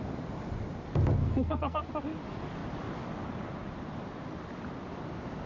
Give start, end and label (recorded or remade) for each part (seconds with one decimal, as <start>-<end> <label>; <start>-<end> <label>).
0.0-1.2 recorded; 1.2-1.8 remade; 1.8-5.5 recorded